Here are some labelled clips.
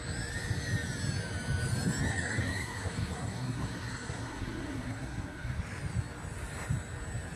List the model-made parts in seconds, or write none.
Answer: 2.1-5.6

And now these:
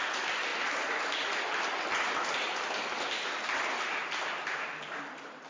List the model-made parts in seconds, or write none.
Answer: none

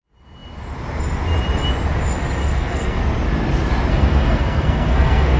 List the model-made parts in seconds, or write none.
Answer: 2.4-3.0; 3.9-5.4

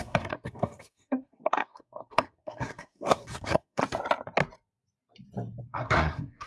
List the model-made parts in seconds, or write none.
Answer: 0.0-3.8; 5.6-6.5

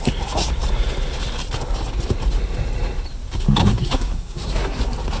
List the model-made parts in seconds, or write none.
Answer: 3.6-4.8

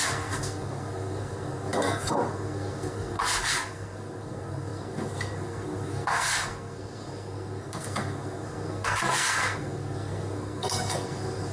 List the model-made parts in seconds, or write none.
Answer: 0.0-11.5

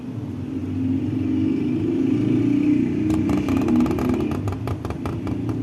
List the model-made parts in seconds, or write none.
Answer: none